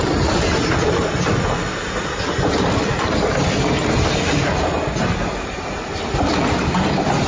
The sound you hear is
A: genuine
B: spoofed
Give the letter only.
B